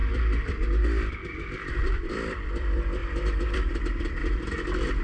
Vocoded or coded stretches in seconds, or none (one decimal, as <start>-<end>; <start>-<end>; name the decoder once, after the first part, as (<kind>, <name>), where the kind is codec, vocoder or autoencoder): 0.0-5.0 (vocoder, BigVGAN v2)